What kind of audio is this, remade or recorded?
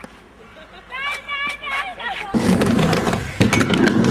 recorded